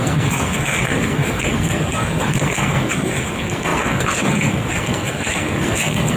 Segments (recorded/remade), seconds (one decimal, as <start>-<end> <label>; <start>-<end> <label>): 0.0-6.2 remade

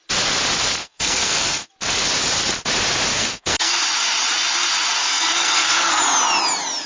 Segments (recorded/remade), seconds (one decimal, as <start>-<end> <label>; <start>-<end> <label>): 0.0-0.8 recorded; 0.8-1.7 remade; 1.7-3.1 recorded; 3.1-3.7 remade; 3.7-5.0 recorded; 5.0-6.0 remade; 6.0-6.9 recorded

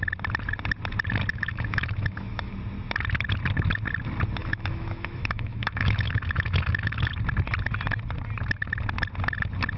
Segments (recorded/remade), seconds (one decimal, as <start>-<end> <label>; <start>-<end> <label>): 0.0-1.3 recorded; 1.3-2.5 remade; 2.5-4.4 recorded; 4.4-7.1 remade; 7.1-9.8 recorded

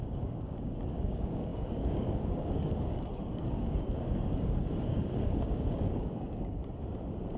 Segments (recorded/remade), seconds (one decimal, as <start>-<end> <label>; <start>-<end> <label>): 0.0-6.6 remade; 6.6-7.4 recorded

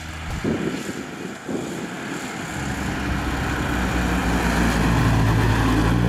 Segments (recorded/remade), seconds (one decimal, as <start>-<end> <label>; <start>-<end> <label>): 0.0-6.1 recorded